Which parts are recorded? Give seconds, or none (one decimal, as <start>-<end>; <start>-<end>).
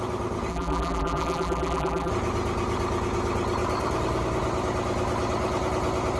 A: 0.0-0.5; 2.1-6.2